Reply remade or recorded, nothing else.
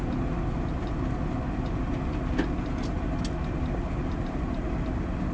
recorded